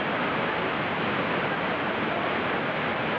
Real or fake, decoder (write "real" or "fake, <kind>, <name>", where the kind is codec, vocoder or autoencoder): real